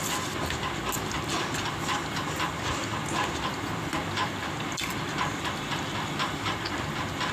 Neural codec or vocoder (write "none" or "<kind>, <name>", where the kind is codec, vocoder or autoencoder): none